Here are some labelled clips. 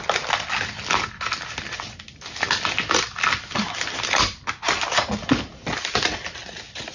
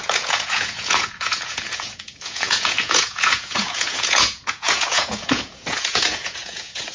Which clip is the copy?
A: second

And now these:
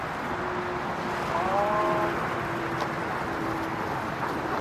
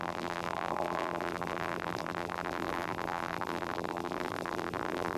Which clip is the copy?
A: second